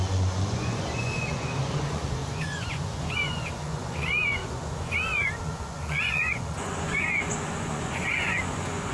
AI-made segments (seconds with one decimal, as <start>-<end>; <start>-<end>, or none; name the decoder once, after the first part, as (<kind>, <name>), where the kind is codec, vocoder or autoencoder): 0.0-8.9 (vocoder, Vocos)